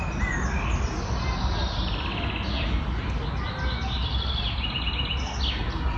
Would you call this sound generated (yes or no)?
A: no